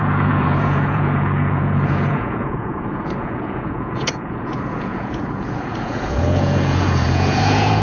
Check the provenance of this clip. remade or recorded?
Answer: remade